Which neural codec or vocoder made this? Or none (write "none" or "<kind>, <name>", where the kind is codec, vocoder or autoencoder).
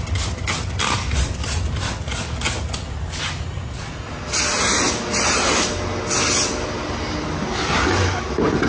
none